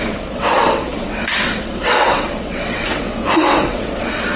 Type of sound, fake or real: fake